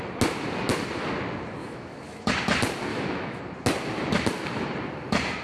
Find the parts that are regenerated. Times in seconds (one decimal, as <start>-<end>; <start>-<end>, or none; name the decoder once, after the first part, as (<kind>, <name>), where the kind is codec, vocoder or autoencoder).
1.6-2.3 (autoencoder, DAC-VAE); 2.9-3.4